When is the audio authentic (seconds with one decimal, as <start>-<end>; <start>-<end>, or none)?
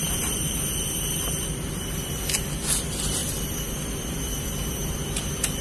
1.8-3.2; 4.4-5.6